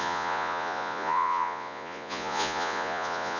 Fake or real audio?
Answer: fake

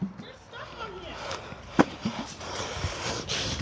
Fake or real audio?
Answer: real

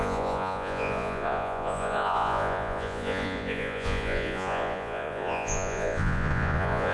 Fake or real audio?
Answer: fake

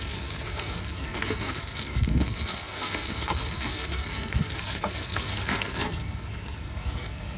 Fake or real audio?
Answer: fake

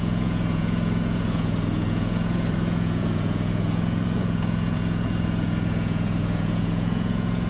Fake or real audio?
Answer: fake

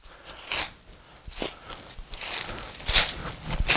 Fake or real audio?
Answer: real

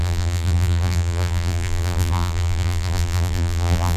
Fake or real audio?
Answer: fake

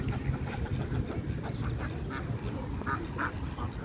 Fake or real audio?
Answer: real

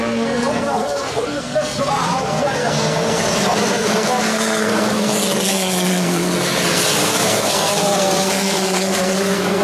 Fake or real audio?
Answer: fake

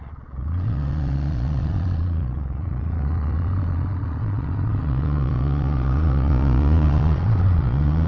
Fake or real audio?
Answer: fake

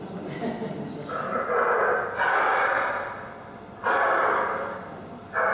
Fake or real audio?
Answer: real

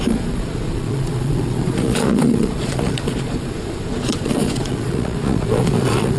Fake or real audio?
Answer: fake